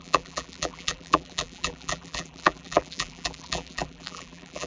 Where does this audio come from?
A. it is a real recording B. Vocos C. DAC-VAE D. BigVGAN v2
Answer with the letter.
D